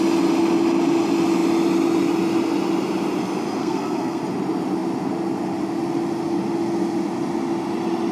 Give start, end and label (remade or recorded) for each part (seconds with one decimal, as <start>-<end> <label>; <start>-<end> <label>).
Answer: 0.0-3.6 recorded; 3.6-4.2 remade; 4.2-8.1 recorded